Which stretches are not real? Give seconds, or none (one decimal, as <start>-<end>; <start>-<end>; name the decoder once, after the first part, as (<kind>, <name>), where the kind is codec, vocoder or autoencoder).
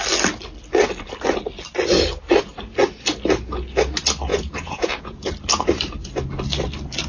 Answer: 4.3-5.3 (vocoder, Vocos)